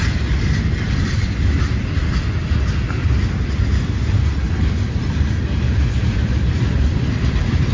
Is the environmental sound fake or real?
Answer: real